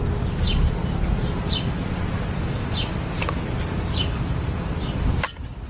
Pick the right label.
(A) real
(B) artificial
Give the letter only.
A